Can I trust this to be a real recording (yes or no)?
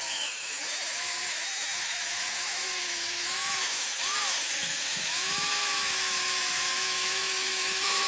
no